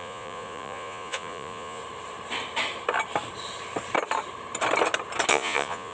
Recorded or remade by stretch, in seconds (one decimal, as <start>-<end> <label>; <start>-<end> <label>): 0.0-1.8 remade; 1.8-5.3 recorded; 5.3-5.9 remade